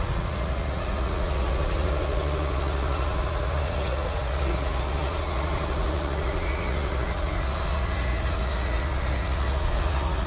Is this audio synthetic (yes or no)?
yes